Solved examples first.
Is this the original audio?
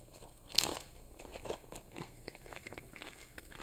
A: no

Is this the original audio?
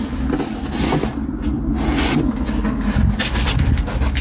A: yes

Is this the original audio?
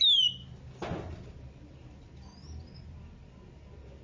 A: yes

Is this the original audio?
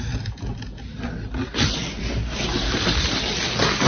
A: yes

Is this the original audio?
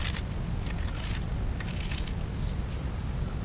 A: yes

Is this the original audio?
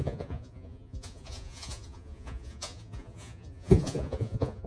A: no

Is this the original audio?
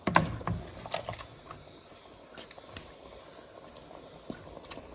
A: yes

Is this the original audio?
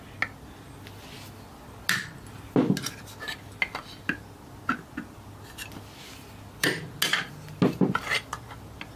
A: yes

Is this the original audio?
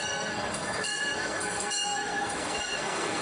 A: no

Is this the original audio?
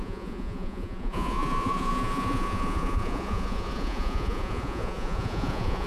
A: no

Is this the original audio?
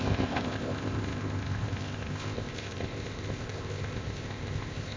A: no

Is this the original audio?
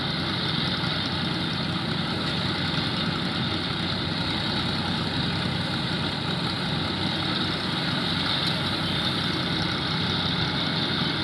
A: yes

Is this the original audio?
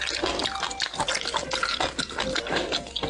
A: yes